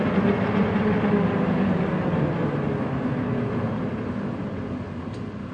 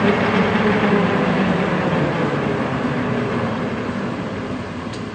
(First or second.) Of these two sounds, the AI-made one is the second